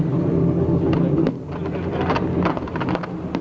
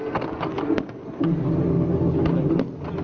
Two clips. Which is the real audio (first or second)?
second